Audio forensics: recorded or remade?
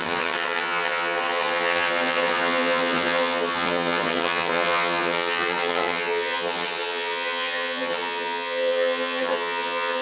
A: remade